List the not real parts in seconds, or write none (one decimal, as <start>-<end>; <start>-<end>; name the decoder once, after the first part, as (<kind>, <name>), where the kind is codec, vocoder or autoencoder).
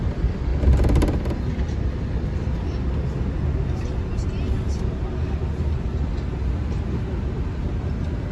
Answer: none